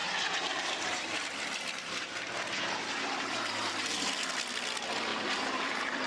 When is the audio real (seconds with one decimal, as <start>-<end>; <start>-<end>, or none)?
3.7-5.1